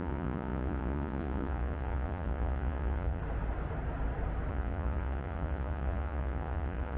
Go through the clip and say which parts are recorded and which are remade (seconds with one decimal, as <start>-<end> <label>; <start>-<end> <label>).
0.0-3.2 remade; 3.2-4.5 recorded; 4.5-7.0 remade